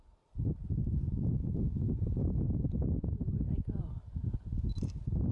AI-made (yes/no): no